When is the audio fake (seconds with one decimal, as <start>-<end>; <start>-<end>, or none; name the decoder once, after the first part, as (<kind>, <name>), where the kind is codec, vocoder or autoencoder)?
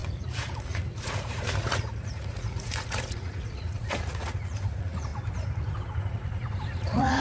0.0-5.1 (vocoder, Vocos); 6.0-7.2